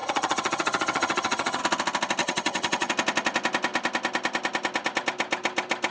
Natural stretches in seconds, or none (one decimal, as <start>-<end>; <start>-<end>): 1.6-2.2; 2.9-5.9